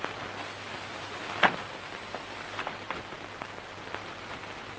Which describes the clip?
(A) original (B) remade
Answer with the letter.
A